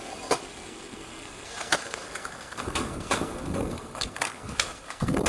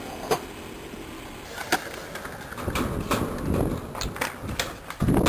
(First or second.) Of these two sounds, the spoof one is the first